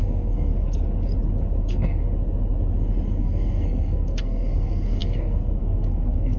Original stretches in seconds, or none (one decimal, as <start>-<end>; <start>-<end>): 0.5-1.6; 2.0-3.2